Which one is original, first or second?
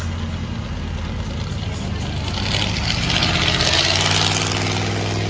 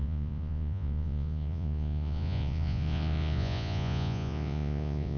first